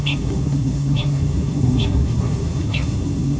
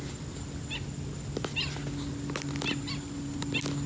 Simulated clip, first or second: first